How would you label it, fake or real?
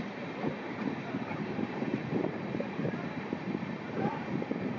fake